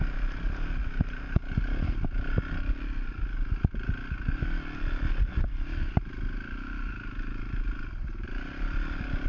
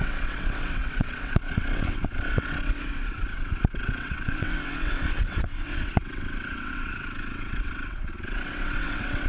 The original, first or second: first